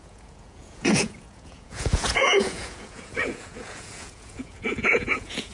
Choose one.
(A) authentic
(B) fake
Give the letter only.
B